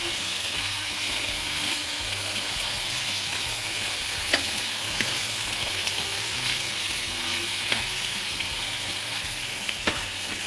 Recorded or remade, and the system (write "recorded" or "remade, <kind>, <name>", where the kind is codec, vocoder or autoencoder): remade, codec, SNAC